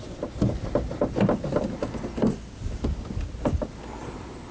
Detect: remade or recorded recorded